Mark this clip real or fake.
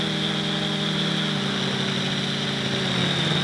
real